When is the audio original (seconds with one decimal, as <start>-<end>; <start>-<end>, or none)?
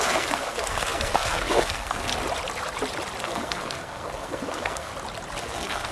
2.1-3.2; 4.9-5.4